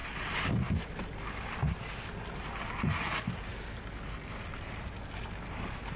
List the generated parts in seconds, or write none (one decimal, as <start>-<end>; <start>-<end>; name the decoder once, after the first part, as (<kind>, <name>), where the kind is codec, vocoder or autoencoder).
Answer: none